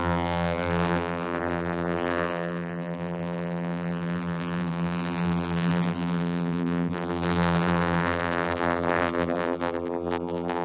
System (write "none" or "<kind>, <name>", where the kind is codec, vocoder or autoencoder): vocoder, BigVGAN v2